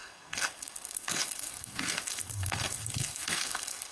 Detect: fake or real fake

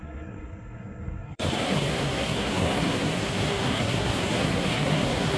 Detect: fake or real fake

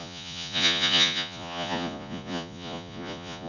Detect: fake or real fake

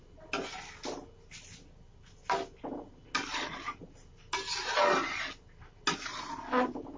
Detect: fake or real real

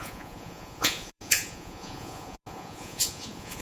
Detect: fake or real fake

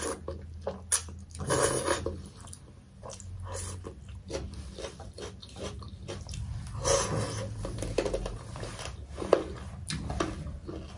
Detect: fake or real real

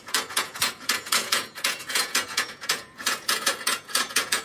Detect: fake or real fake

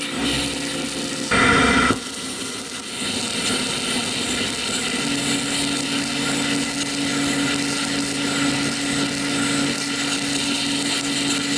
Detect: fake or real real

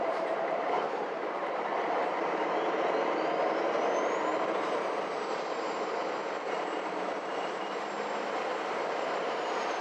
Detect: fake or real fake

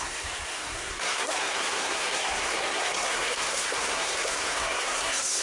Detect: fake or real fake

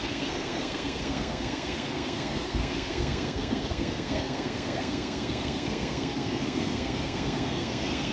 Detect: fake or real fake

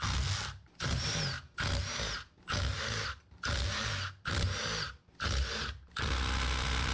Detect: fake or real real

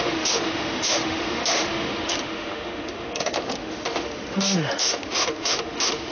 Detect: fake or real fake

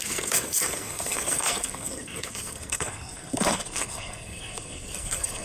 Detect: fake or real fake